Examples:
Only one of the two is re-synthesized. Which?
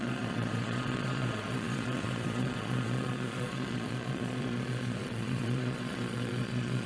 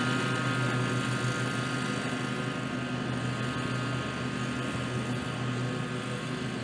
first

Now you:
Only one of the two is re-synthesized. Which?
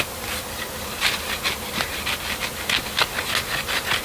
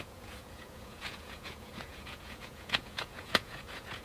second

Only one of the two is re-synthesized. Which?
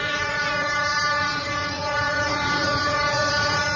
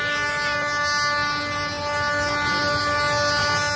first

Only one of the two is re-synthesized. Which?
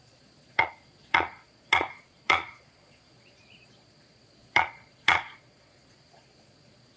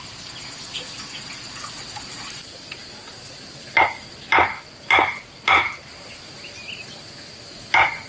first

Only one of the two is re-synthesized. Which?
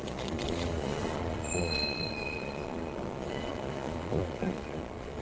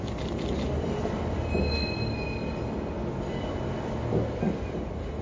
first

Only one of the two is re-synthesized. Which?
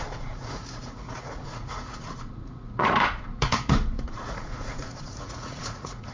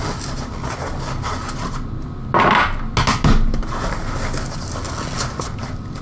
first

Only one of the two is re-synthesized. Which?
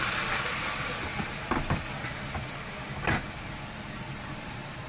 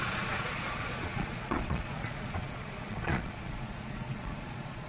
second